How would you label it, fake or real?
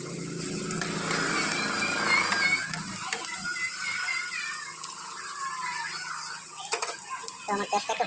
real